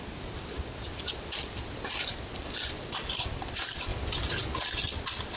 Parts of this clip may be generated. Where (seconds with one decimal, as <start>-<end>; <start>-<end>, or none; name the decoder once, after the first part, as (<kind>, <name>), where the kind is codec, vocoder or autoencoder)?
none

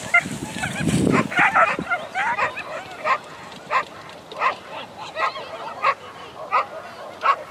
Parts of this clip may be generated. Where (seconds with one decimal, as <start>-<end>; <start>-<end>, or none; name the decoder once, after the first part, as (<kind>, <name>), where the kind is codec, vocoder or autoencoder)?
0.4-1.2 (vocoder, BigVGAN v2); 2.2-5.5